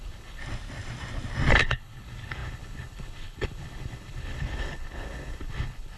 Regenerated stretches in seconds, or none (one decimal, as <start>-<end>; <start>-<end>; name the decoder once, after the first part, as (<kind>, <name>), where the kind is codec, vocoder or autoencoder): 0.0-0.4 (codec, HILCodec); 1.5-6.0

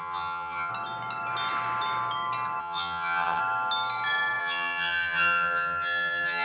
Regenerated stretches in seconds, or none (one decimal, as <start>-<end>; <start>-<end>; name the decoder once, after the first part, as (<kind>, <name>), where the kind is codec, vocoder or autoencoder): 0.0-0.7 (vocoder, HiFi-GAN); 2.6-3.4; 4.4-6.4

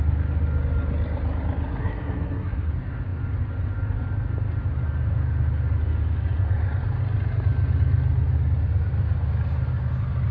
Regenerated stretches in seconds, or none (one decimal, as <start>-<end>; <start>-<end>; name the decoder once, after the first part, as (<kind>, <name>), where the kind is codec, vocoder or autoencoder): 1.8-2.7 (codec, SNAC)

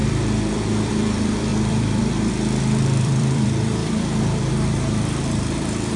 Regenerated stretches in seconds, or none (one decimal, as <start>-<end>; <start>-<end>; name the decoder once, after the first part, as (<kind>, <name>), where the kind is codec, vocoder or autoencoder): 0.0-6.0 (vocoder, BigVGAN v2)

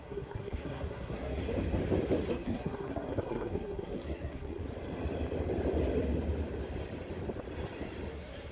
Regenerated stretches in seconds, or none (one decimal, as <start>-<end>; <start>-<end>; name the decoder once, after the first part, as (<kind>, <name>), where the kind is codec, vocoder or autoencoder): 0.0-1.4 (codec, SNAC); 2.3-4.6; 8.1-8.5

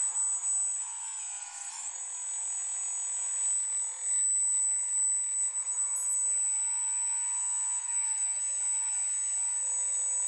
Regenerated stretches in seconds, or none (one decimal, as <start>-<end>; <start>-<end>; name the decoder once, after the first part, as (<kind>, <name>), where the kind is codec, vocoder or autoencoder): 1.4-2.0 (autoencoder, DAC-VAE); 7.8-8.4

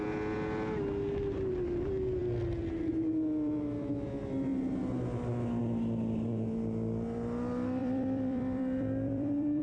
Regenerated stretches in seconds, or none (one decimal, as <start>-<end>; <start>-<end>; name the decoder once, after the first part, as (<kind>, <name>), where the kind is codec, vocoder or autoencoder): 7.8-9.6 (vocoder, BigVGAN v2)

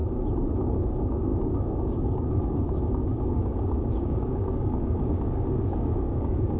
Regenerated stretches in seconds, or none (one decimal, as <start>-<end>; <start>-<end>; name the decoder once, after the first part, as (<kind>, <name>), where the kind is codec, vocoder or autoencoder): 0.5-6.6 (codec, DAC)